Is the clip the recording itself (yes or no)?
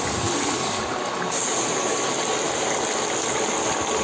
yes